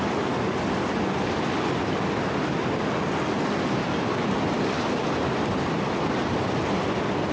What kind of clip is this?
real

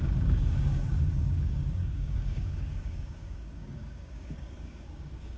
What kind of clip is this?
fake